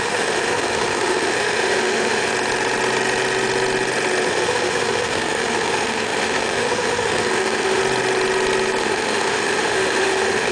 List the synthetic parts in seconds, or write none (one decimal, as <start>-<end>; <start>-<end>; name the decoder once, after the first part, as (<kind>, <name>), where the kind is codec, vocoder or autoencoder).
0.0-2.3 (autoencoder, DAC-VAE); 4.3-7.8; 8.8-10.5